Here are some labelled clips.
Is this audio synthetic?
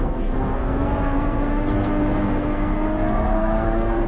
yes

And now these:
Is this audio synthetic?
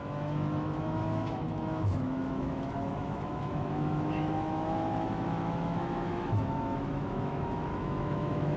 yes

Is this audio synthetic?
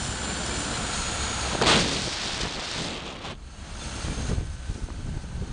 no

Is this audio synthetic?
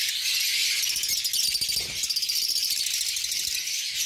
no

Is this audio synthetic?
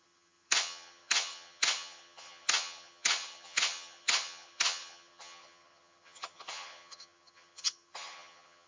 yes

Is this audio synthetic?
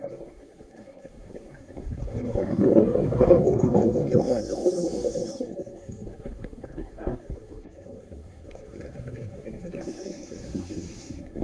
yes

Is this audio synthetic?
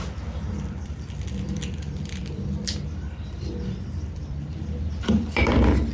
yes